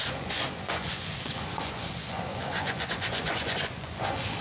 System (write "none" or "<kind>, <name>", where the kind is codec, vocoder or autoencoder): vocoder, Vocos